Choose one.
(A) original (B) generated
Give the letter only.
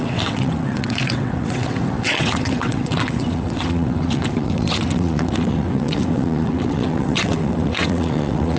B